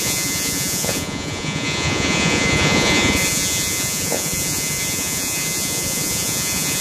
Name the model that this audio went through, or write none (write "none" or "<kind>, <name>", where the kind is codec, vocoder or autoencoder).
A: vocoder, Vocos